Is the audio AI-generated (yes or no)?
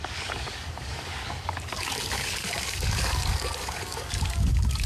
yes